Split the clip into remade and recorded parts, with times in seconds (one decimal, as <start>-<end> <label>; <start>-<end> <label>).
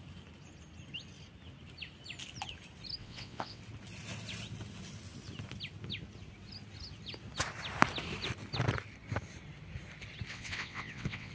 0.0-3.0 recorded; 3.0-3.6 remade; 3.6-10.3 recorded; 10.3-11.3 remade